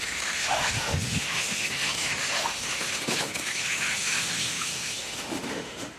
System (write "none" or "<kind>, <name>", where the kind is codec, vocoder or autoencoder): autoencoder, DAC-VAE